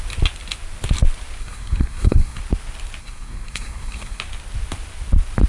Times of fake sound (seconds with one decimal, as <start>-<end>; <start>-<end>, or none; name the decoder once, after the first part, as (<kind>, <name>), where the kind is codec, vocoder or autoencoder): 1.4-2.4 (codec, SNAC); 3.0-4.2